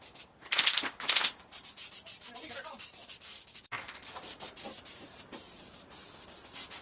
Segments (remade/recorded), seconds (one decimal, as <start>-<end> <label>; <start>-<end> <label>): 0.0-1.2 recorded; 1.2-3.1 remade; 3.1-4.0 recorded; 4.0-5.9 remade; 5.9-6.8 recorded